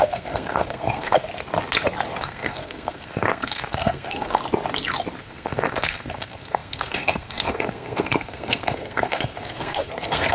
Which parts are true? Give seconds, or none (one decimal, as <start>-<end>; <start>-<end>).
1.2-2.2; 4.4-5.2